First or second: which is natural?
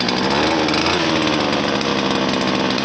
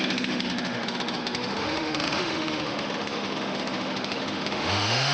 first